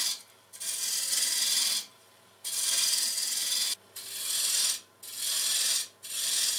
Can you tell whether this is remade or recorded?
recorded